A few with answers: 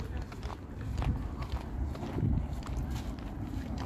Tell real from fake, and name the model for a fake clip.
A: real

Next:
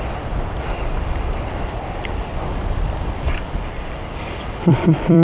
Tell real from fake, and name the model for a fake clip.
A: fake, vocoder, BigVGAN v2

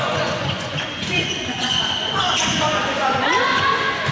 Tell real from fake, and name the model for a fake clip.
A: fake, vocoder, Vocos